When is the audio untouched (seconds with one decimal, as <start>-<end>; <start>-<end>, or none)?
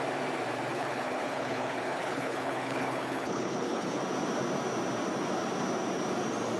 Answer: 0.0-0.7; 4.0-6.6